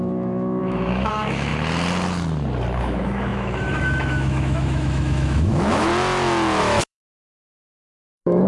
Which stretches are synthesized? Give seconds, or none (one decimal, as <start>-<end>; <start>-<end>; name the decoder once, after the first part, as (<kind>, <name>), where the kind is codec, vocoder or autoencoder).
0.0-1.5 (autoencoder, DAC-VAE); 2.8-5.9; 6.6-8.5